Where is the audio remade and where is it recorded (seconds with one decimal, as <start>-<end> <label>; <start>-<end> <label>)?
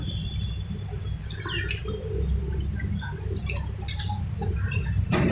0.0-5.3 recorded